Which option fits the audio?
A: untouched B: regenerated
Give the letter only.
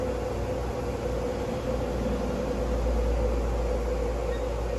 A